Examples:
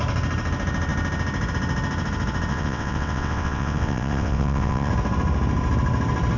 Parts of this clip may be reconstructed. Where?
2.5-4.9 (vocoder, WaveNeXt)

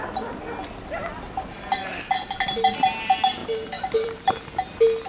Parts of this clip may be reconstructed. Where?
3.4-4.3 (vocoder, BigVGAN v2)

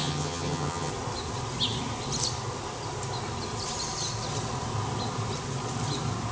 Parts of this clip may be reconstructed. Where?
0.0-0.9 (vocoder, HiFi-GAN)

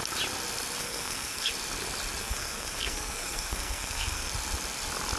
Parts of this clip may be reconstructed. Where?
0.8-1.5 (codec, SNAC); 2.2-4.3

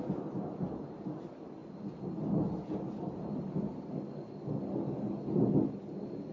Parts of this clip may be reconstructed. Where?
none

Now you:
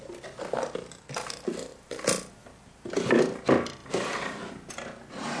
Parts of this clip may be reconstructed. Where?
1.7-3.2 (vocoder, BigVGAN v2); 3.8-4.7

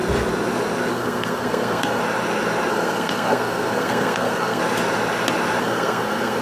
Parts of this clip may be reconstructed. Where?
0.9-2.0 (codec, SNAC); 2.7-4.6; 5.6-6.4

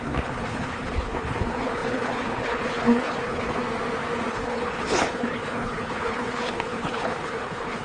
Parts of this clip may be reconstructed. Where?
0.0-3.6 (codec, HILCodec); 4.3-7.8